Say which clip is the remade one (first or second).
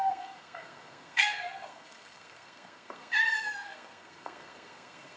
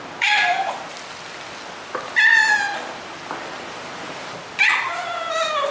first